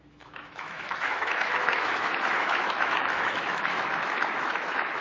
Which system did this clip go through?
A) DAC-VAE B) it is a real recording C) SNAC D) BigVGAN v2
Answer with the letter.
A